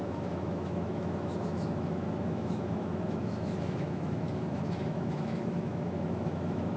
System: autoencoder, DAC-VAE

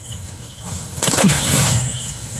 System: codec, SNAC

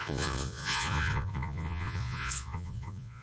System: vocoder, Vocos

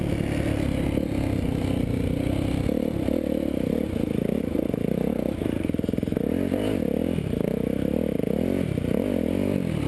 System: none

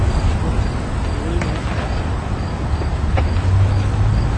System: none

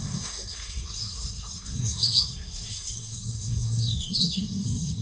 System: codec, SNAC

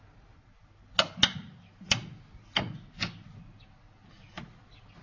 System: none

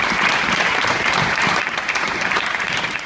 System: vocoder, BigVGAN v2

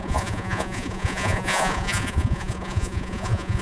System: vocoder, Vocos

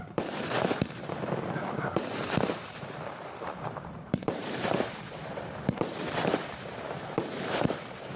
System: vocoder, BigVGAN v2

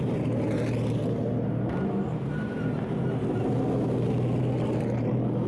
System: none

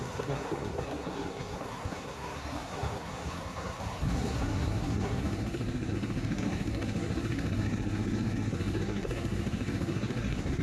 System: codec, SNAC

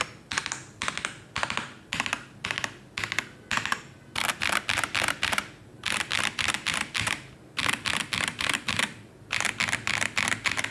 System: none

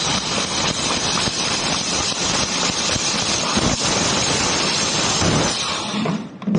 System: vocoder, BigVGAN v2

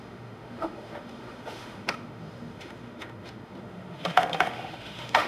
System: autoencoder, DAC-VAE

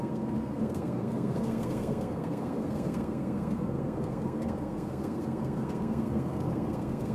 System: codec, SNAC